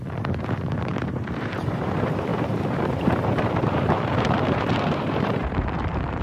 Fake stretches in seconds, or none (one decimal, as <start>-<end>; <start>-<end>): 0.0-6.2